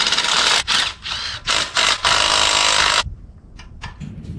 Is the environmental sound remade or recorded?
recorded